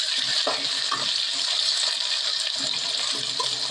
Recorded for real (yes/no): yes